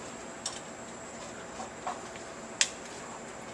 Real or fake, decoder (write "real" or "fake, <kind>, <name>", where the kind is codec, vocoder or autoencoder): real